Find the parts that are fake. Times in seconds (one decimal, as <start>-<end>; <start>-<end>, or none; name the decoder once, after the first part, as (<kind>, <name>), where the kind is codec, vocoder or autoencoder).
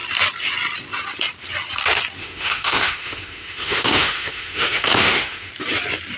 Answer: 2.2-5.5 (autoencoder, DAC-VAE)